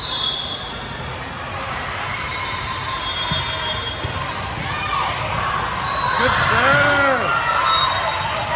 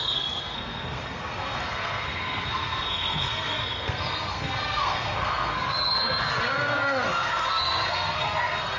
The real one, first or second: first